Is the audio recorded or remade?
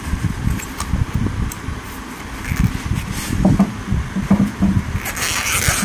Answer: recorded